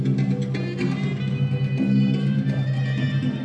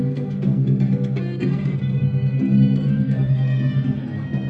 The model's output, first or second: second